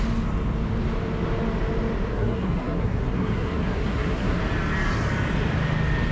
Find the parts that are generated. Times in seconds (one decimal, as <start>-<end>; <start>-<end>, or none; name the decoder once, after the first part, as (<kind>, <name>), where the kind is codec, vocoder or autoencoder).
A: 2.1-4.4 (codec, SNAC)